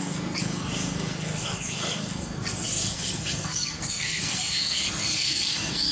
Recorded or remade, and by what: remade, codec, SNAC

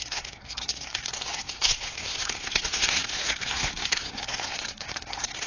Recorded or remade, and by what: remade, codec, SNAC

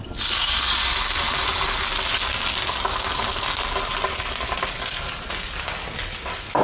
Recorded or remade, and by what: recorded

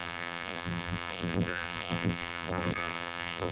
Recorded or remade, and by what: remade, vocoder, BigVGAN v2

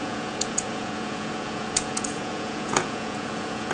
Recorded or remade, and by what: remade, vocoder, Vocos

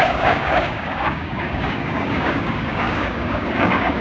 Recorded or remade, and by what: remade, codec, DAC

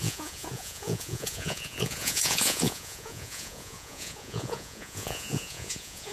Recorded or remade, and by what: remade, vocoder, Vocos